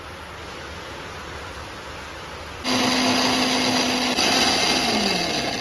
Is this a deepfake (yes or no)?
no